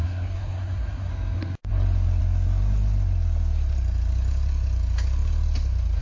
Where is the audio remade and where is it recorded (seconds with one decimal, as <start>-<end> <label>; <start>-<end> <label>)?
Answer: 0.0-1.1 remade; 1.1-6.0 recorded